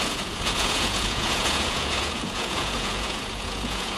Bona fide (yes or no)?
no